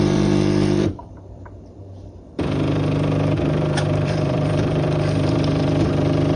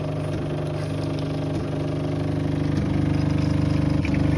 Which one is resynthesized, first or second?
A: first